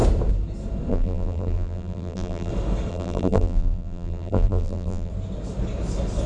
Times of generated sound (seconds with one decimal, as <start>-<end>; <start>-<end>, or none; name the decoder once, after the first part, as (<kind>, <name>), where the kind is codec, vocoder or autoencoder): 0.9-2.5 (vocoder, BigVGAN v2); 2.9-5.1